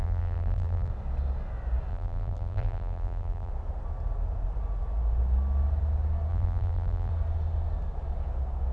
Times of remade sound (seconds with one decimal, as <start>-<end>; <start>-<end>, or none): 0.0-0.9; 1.9-3.5; 6.3-7.1